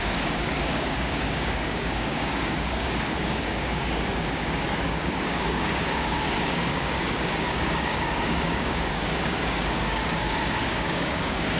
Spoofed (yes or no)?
yes